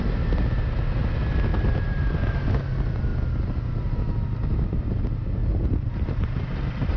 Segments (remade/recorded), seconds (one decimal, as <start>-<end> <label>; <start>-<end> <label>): 0.0-1.5 recorded; 1.5-2.2 remade; 2.2-5.4 recorded; 5.4-7.0 remade